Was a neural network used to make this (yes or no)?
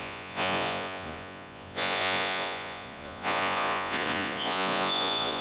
yes